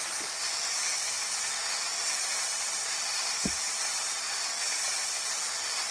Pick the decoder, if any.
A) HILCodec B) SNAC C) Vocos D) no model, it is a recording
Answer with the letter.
D